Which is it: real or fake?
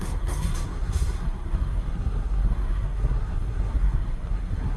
fake